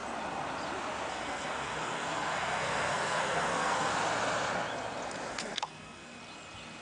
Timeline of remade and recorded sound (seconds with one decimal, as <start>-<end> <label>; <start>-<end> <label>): 0.0-1.1 recorded; 1.1-3.9 remade; 3.9-5.3 recorded; 5.3-6.2 remade; 6.2-6.8 recorded